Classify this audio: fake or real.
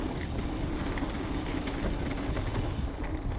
real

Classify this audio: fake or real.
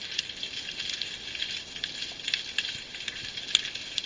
real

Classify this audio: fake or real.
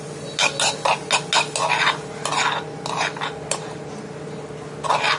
real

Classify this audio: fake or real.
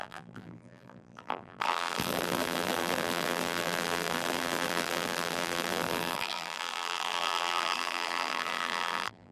fake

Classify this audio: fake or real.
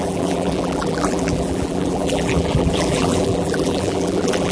fake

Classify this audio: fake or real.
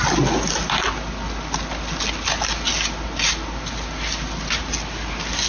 real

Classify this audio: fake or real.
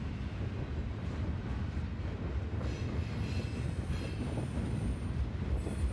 real